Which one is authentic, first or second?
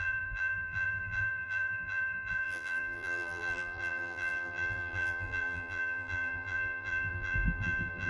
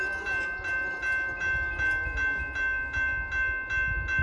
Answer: second